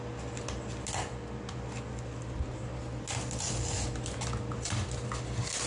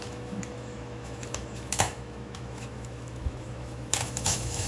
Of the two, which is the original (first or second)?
first